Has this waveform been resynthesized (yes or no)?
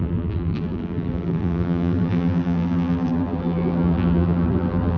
yes